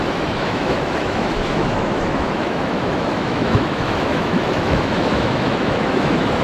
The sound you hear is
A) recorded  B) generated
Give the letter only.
B